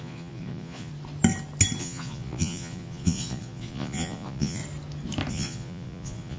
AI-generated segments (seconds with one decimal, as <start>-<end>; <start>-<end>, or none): 0.0-0.9; 1.8-4.6; 5.3-6.4